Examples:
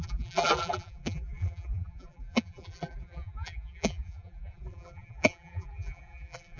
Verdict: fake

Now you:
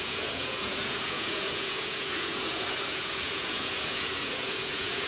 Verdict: fake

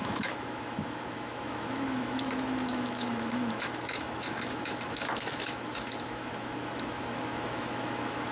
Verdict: fake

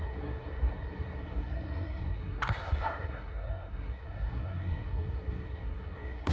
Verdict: fake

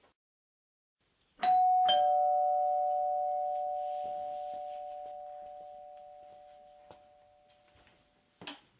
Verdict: real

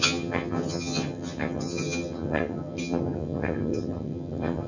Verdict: fake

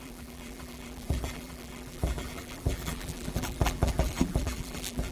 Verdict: fake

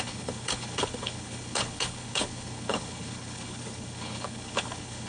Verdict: fake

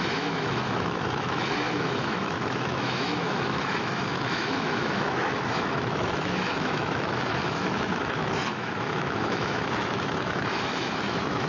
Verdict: fake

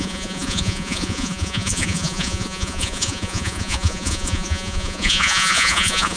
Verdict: fake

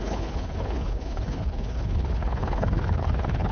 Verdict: fake